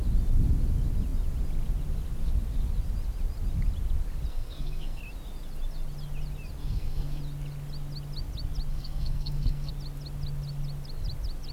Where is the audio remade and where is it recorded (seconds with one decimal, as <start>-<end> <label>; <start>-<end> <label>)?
0.0-4.3 recorded; 4.3-5.0 remade; 5.0-6.6 recorded; 6.6-7.2 remade; 7.2-8.7 recorded; 8.7-9.7 remade; 9.7-11.5 recorded